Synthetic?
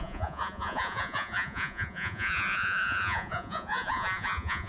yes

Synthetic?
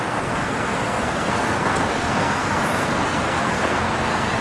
yes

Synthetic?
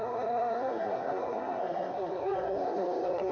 yes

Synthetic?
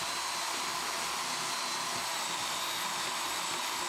no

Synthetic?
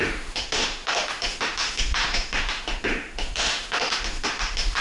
yes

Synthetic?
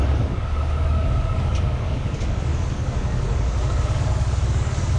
yes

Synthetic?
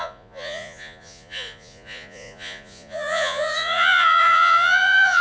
yes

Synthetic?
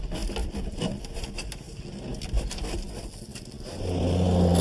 no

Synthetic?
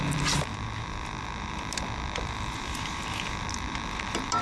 yes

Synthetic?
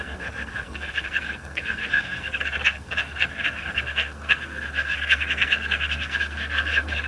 yes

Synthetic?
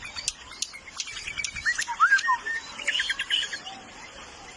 no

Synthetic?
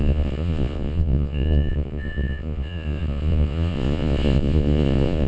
yes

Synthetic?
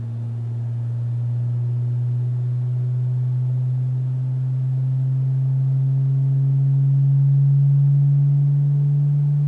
no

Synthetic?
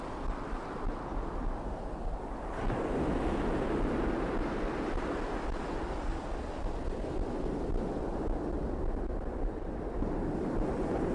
no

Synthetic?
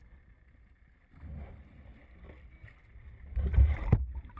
no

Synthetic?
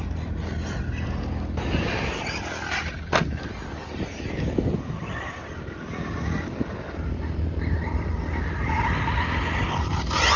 no